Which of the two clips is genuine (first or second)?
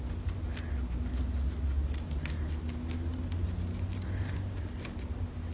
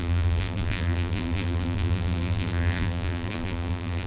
first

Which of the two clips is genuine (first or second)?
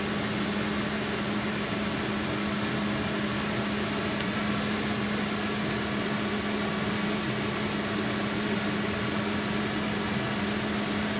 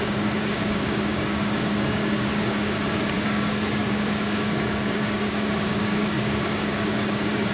first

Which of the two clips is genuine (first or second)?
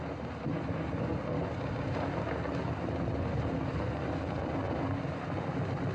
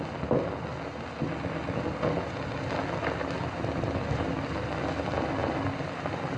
second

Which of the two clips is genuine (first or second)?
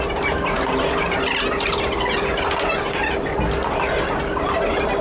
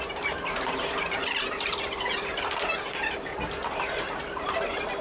first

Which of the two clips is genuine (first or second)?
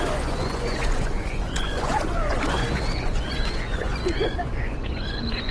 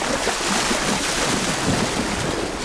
second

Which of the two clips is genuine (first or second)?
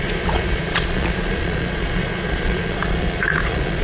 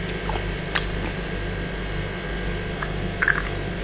second